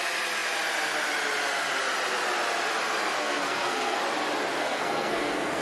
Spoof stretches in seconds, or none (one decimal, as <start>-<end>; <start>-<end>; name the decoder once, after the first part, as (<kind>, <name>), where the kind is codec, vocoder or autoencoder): 3.2-4.0 (codec, SNAC); 4.6-5.6